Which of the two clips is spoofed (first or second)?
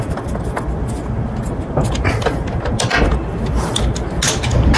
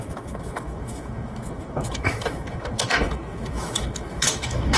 second